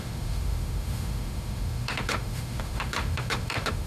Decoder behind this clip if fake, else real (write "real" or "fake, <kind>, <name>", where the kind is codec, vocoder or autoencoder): fake, autoencoder, DAC-VAE